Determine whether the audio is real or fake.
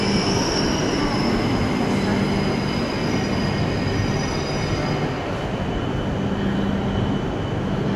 real